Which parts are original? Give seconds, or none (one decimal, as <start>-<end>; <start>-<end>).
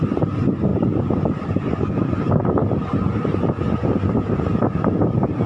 none